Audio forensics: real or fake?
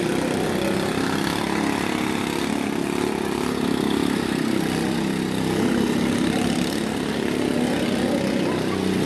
real